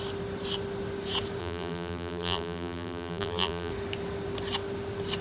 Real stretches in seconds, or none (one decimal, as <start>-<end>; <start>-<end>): 0.0-1.4; 3.7-5.2